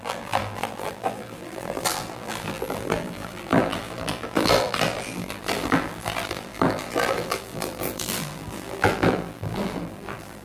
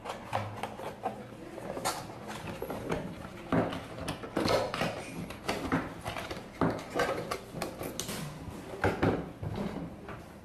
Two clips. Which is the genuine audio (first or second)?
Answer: second